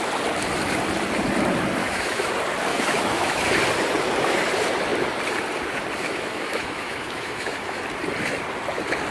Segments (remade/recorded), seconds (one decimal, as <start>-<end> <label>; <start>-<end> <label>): 0.0-1.8 recorded; 1.8-2.3 remade; 2.3-2.7 recorded; 2.7-3.5 remade; 3.5-6.0 recorded; 6.0-7.8 remade; 7.8-9.1 recorded